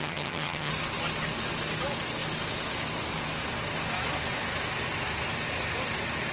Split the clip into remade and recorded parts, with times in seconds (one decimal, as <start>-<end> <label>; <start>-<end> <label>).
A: 0.0-0.7 remade; 0.7-6.3 recorded